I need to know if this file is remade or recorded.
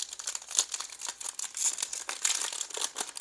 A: recorded